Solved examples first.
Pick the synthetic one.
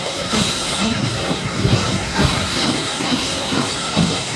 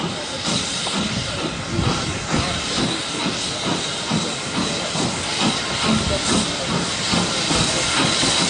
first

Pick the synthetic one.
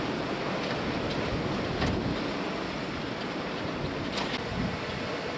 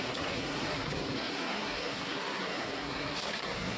second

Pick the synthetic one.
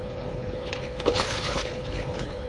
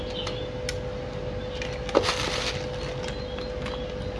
first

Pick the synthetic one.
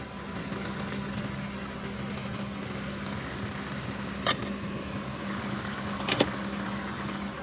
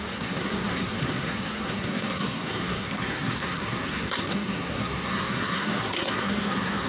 second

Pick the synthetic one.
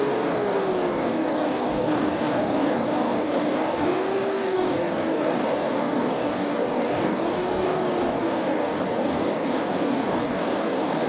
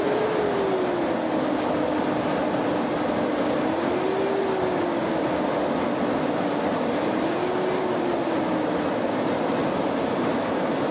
first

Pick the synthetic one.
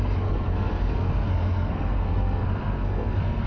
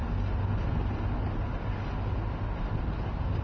first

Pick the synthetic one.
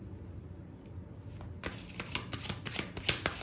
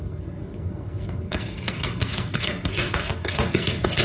second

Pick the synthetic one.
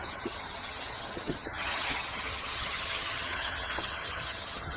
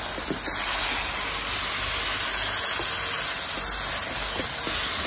first